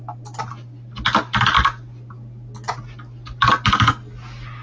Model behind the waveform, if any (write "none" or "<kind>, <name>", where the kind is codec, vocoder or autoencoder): none